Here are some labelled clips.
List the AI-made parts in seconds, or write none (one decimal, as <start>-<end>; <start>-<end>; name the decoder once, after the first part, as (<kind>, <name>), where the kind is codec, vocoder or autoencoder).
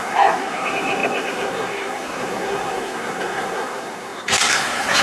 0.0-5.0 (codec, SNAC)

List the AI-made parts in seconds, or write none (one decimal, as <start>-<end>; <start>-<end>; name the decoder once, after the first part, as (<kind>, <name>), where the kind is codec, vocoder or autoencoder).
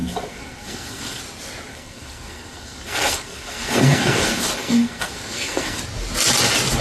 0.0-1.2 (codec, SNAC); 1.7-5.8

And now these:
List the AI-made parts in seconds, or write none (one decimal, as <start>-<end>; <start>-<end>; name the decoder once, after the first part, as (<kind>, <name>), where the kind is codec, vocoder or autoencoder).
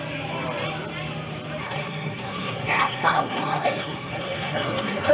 1.6-5.1 (codec, SNAC)